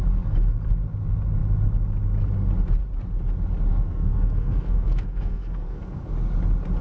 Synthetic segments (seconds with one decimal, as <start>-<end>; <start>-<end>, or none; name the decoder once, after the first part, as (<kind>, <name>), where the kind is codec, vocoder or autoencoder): 3.7-6.1 (codec, SNAC)